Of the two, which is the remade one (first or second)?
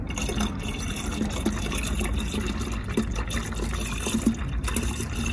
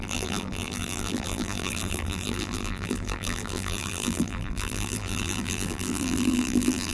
second